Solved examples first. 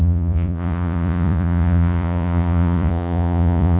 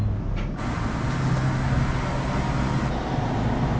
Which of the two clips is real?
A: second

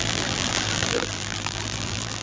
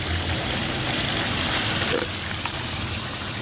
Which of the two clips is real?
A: second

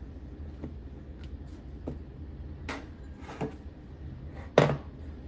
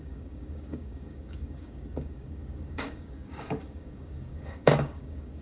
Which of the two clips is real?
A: first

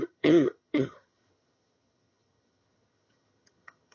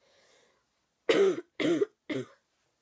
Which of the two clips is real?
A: second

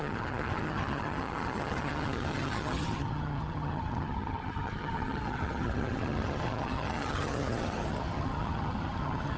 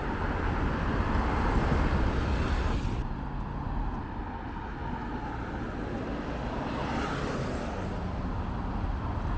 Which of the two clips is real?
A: second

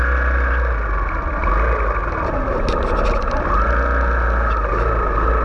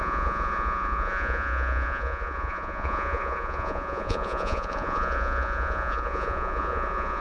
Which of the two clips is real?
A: first